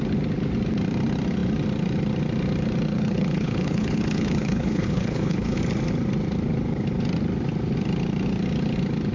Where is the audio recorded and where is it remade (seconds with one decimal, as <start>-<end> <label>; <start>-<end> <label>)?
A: 0.0-2.9 recorded; 2.9-5.6 remade; 5.6-9.1 recorded